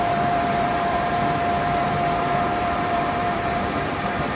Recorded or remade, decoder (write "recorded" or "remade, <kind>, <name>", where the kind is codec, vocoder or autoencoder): remade, vocoder, BigVGAN v2